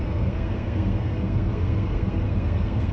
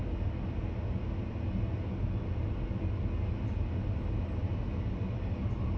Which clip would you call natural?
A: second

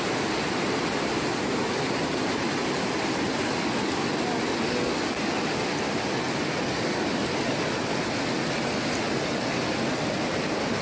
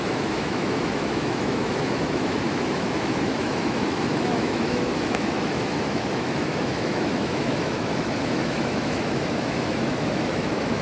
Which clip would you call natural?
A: first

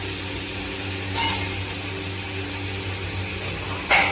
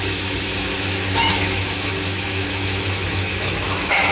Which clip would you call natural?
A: first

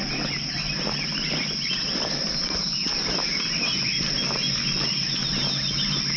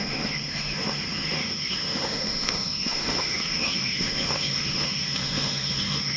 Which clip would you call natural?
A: first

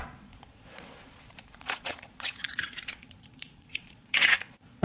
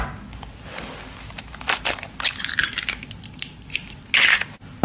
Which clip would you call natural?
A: second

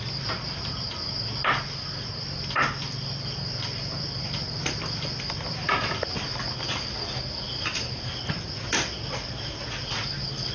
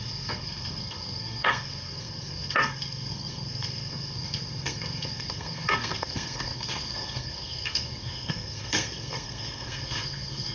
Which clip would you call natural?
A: first